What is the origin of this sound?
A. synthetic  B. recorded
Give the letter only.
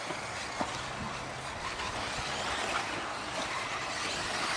B